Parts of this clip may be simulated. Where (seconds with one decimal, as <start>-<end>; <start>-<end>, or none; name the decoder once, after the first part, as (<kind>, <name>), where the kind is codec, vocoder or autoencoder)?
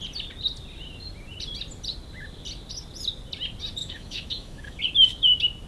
3.8-4.8 (autoencoder, DAC-VAE)